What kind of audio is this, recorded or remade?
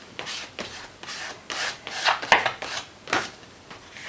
recorded